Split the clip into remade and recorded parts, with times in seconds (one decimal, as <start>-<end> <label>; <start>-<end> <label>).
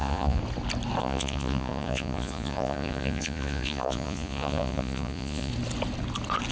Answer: 0.0-0.4 remade; 0.4-1.0 recorded; 1.0-5.5 remade; 5.5-6.5 recorded